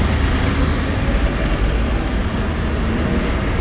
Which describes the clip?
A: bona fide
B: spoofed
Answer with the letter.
A